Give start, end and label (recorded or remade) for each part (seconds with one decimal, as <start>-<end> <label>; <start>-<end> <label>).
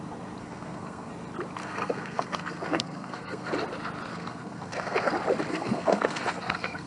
0.0-0.4 recorded; 0.4-1.1 remade; 1.1-1.6 recorded; 1.6-3.5 remade; 3.5-4.1 recorded; 4.1-5.1 remade; 5.1-5.5 recorded; 5.5-6.9 remade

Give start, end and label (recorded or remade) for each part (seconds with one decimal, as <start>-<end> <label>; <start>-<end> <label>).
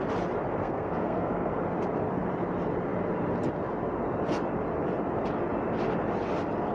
0.0-0.6 recorded; 0.6-1.6 remade; 1.6-6.7 recorded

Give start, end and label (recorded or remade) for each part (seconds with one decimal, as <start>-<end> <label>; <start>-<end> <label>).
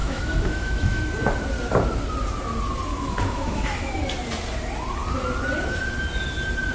0.0-1.1 remade; 1.1-2.9 recorded; 2.9-4.0 remade; 4.0-6.7 recorded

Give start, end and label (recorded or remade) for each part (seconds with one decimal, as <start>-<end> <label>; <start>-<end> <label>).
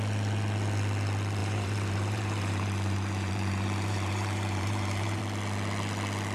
0.0-1.4 recorded; 1.4-5.2 remade; 5.2-6.3 recorded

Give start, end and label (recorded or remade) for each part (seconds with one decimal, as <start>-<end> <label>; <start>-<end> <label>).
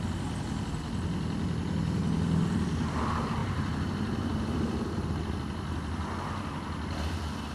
0.0-3.4 recorded; 3.4-5.2 remade; 5.2-7.5 recorded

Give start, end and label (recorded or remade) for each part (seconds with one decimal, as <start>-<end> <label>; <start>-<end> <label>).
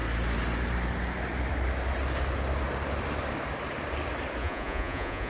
0.0-4.4 recorded; 4.4-5.3 remade